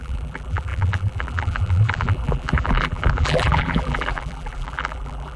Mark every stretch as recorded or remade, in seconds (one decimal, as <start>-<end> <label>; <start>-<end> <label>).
0.0-5.4 remade